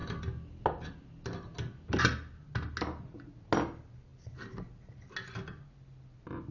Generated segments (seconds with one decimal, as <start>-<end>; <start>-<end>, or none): none